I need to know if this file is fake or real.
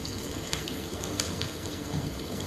fake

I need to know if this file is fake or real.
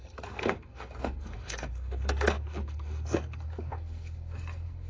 fake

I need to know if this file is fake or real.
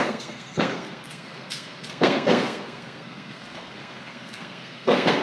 fake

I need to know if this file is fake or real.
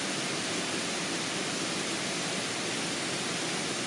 real